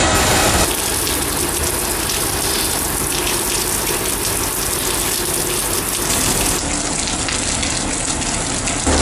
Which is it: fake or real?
real